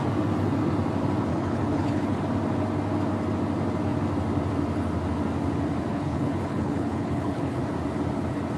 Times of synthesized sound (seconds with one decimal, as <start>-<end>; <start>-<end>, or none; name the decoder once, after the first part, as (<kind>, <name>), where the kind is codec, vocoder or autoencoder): 1.3-2.2 (codec, HILCodec); 5.9-7.6